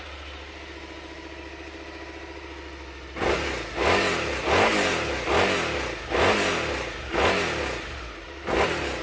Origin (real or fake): real